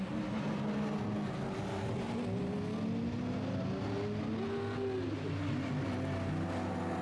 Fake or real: real